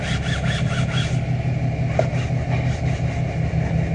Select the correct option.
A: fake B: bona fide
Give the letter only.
B